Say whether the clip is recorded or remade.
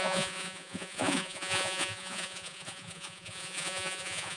remade